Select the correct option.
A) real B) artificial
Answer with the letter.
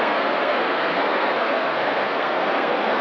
B